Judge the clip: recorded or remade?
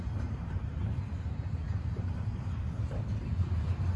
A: recorded